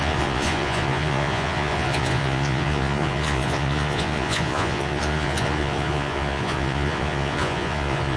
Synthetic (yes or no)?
yes